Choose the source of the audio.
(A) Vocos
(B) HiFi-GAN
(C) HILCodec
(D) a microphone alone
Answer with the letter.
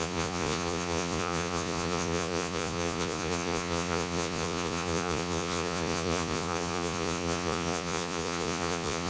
A